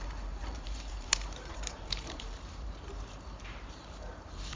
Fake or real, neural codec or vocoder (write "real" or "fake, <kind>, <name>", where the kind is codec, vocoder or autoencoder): fake, vocoder, BigVGAN v2